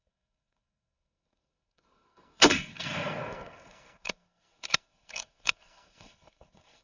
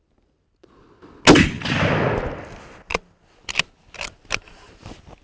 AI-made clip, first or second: first